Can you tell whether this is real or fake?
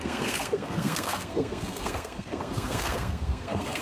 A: fake